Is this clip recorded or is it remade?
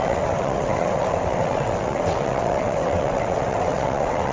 remade